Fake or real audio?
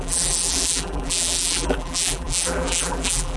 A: fake